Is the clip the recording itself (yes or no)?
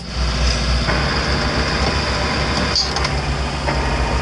yes